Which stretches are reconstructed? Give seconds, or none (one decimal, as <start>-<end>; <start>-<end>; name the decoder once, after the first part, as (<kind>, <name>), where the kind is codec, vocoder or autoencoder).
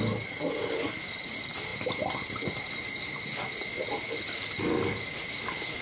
none